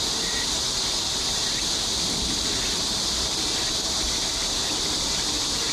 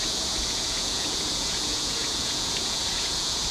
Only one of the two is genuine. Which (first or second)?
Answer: first